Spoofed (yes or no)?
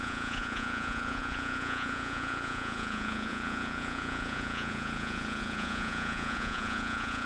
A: yes